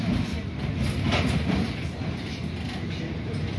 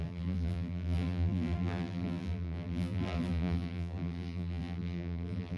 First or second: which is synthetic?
second